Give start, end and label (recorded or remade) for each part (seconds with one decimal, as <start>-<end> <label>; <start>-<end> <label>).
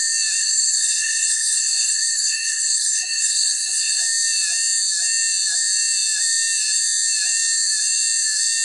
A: 0.0-0.4 recorded; 0.4-4.0 remade; 4.0-8.6 recorded